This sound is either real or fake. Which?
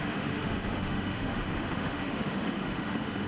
fake